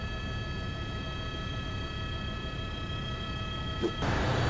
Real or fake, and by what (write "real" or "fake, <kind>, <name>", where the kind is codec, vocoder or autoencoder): fake, vocoder, BigVGAN v2